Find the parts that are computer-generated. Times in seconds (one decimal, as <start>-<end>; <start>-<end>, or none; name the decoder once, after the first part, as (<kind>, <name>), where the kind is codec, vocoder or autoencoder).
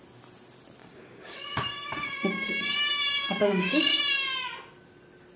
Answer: 0.8-4.0 (codec, DAC)